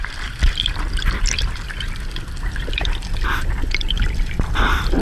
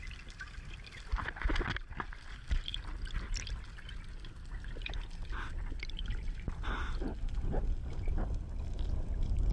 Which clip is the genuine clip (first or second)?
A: second